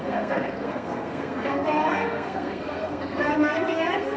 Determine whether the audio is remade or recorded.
remade